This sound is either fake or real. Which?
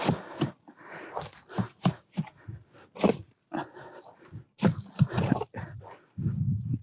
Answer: real